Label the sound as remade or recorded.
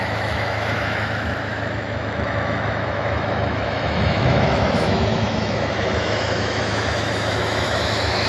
remade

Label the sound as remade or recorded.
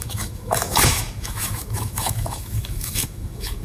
remade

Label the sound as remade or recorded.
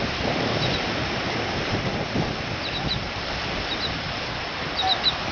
recorded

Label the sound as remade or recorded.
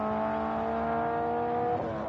recorded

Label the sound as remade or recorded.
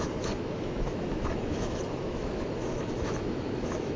remade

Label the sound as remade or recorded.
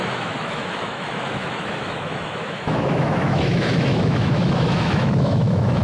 remade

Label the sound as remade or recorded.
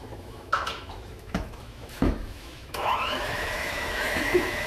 remade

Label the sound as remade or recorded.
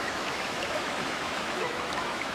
remade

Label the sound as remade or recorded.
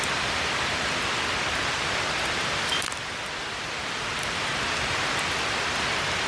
recorded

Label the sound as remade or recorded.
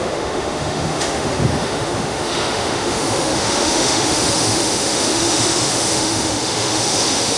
remade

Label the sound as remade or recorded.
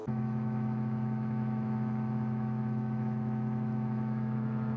remade